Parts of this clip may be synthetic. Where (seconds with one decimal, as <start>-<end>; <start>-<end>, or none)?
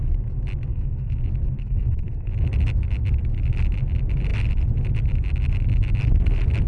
0.7-1.2; 1.6-2.3